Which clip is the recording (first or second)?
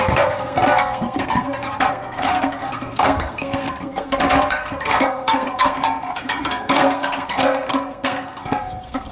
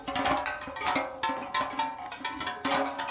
second